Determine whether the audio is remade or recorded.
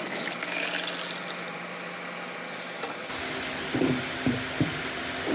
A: recorded